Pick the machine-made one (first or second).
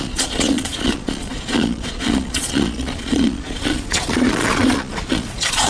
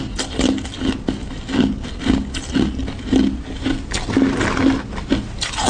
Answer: first